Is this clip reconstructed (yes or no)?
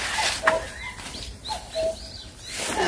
no